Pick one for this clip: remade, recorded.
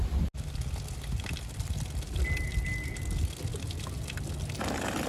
recorded